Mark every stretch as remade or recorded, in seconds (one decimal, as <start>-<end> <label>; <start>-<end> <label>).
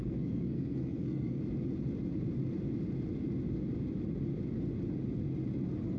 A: 0.0-1.4 remade; 1.4-6.0 recorded